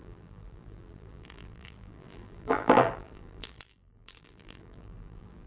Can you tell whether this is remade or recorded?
remade